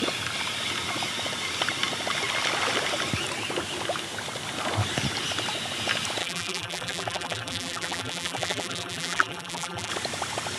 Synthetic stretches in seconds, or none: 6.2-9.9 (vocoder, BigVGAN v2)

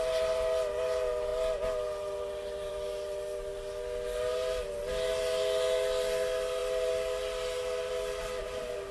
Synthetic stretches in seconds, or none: none

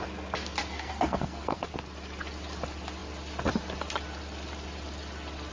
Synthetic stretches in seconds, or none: 0.6-1.6 (codec, SNAC)

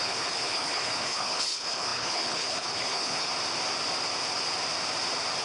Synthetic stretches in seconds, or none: 0.0-3.3 (codec, HILCodec)

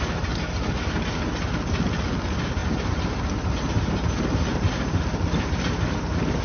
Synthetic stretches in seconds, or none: none

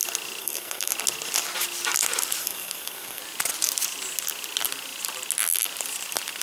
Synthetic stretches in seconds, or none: 0.4-0.9 (codec, SNAC); 2.4-3.2

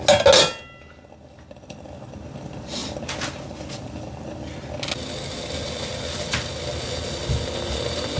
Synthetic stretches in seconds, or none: none